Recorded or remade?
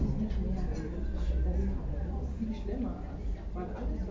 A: recorded